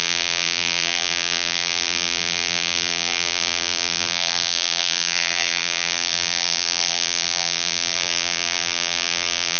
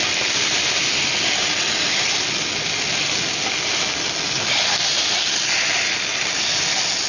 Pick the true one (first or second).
second